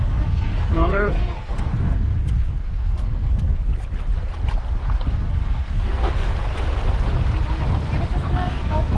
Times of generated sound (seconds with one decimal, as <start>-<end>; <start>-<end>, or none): 0.0-3.7; 5.1-6.2; 8.2-9.0